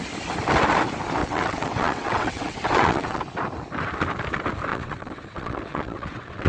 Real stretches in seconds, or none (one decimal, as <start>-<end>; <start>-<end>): 0.0-1.2; 3.2-4.7